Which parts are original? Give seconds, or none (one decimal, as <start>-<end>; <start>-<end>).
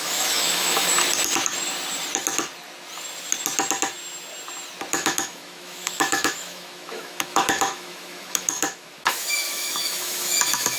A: 0.9-4.9